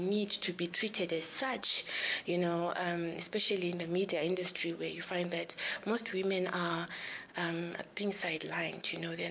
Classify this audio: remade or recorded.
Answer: remade